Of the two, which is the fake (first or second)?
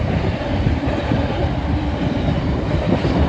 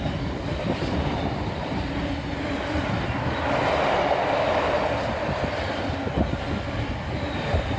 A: first